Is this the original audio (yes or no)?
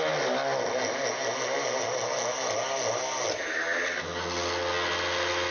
yes